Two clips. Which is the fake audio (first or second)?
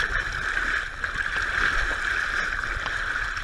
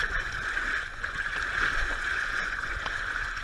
second